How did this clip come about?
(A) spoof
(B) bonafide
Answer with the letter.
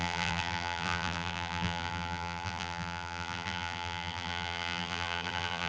A